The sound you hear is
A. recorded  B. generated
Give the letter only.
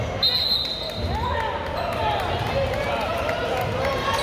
A